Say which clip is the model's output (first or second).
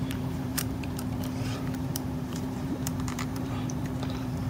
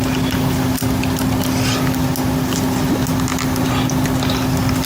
first